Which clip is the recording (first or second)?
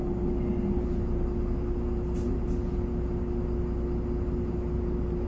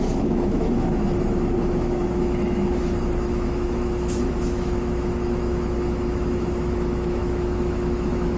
first